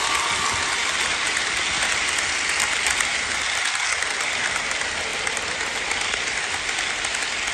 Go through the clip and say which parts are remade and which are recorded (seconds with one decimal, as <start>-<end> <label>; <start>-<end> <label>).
0.0-7.5 recorded